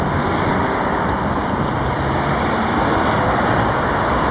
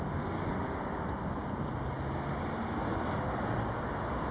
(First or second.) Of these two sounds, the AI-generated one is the first